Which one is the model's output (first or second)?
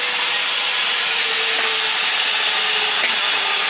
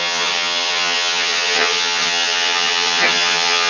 second